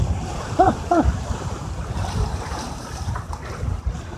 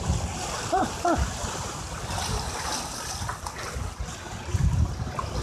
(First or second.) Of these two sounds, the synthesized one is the first